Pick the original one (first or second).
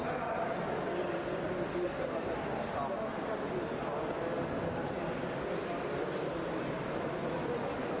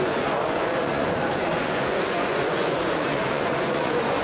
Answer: first